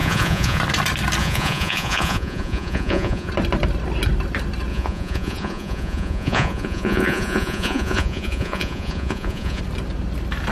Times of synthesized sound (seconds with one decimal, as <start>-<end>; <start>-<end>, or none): 0.0-0.6; 1.2-3.3; 4.7-9.6